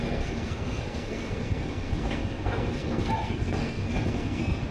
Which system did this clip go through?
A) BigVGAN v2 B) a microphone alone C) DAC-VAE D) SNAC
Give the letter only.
D